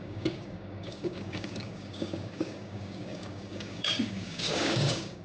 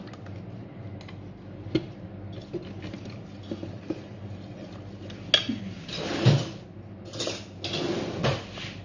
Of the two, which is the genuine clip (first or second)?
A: second